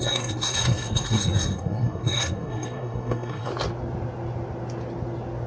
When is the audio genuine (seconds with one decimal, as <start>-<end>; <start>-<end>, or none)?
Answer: 3.5-5.5